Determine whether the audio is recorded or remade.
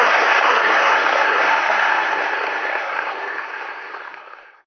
remade